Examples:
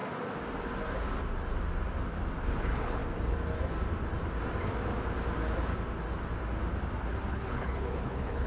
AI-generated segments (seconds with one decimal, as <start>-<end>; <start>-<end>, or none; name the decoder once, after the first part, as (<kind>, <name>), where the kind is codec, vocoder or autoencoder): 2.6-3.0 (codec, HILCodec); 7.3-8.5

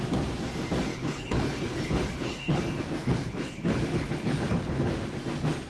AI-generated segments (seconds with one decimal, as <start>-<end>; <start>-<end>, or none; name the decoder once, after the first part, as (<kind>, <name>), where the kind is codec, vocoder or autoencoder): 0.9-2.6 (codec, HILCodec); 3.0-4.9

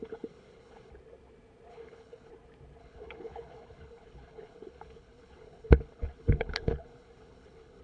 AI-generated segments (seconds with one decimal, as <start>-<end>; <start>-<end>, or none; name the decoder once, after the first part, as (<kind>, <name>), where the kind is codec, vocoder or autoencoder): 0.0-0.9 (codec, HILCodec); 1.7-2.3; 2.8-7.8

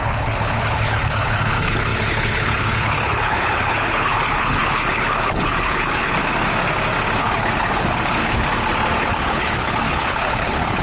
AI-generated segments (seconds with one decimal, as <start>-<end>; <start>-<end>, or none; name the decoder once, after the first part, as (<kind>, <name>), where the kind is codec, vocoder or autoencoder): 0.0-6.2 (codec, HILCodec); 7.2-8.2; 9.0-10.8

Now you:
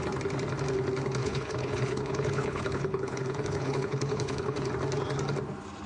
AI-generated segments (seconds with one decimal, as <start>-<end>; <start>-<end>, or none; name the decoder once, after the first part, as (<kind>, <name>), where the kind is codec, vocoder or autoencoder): 1.2-4.7 (codec, HILCodec)

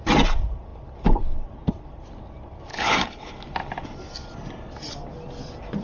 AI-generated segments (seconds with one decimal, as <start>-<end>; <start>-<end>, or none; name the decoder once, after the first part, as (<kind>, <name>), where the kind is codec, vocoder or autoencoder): 2.7-3.3 (codec, HILCodec)

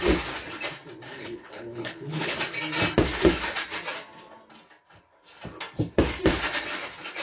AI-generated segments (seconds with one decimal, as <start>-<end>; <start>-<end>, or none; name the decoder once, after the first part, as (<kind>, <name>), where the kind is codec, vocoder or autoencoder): 1.1-2.4 (codec, HILCodec)

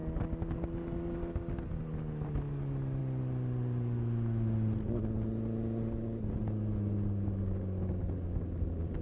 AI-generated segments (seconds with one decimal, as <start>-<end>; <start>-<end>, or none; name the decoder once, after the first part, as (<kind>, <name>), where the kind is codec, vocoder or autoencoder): none